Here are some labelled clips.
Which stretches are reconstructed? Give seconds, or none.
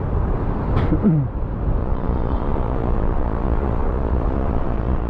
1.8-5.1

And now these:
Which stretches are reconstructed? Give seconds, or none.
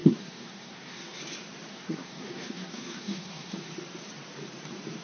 0.0-1.2; 1.7-3.7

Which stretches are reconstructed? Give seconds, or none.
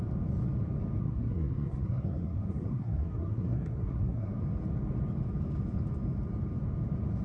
1.0-4.4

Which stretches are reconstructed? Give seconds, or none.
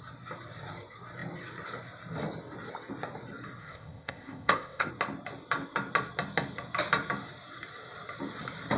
3.6-4.9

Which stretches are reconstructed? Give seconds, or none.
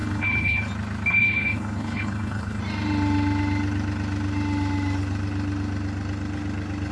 0.0-0.7; 1.1-2.6